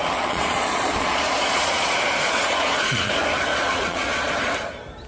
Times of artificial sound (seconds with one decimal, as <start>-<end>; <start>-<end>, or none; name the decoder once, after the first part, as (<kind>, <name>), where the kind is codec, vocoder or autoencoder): 0.0-3.1 (vocoder, Vocos); 3.5-4.3

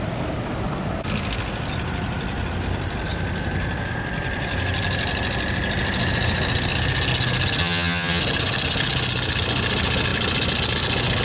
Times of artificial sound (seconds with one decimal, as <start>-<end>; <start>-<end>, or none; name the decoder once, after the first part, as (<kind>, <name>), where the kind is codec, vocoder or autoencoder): 7.6-8.2 (vocoder, HiFi-GAN)

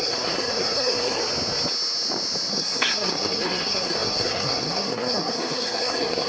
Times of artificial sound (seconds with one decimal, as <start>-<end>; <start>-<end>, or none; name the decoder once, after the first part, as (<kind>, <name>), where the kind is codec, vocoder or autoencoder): 0.0-1.2 (codec, SNAC); 2.5-6.3

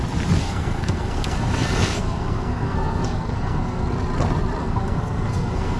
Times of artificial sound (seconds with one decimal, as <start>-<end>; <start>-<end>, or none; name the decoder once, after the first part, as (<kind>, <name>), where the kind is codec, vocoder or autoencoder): 0.4-3.9 (codec, SNAC); 4.6-5.8

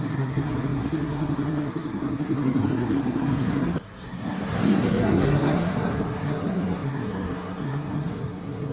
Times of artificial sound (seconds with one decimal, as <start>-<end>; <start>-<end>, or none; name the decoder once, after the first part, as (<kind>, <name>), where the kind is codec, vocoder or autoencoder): 0.0-8.7 (codec, SNAC)

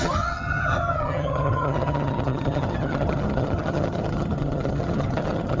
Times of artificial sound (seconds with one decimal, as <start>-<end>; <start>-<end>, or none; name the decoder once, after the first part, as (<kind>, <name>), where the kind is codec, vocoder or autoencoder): 0.0-5.6 (vocoder, HiFi-GAN)

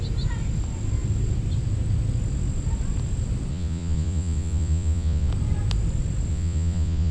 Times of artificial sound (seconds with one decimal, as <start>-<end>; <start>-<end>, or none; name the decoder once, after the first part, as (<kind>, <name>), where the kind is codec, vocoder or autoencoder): 3.5-5.3 (vocoder, Vocos); 6.3-7.1

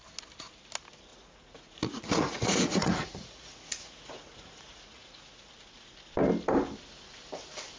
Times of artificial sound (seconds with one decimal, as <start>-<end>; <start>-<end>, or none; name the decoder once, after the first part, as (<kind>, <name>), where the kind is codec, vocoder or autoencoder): 1.1-5.5 (vocoder, Vocos)